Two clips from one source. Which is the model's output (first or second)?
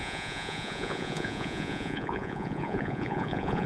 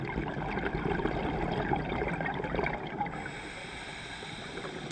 first